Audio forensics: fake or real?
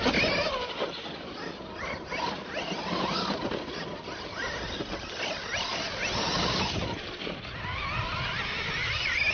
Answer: real